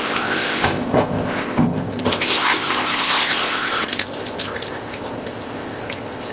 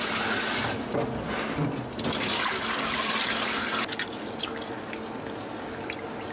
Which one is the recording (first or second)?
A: second